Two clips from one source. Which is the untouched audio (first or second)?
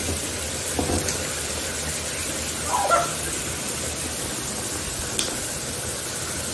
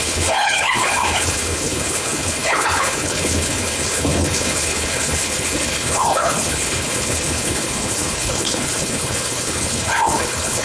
first